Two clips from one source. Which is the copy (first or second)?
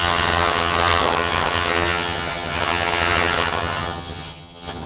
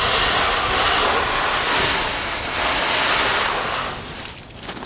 first